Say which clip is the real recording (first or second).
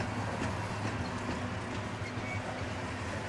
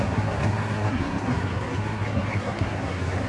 first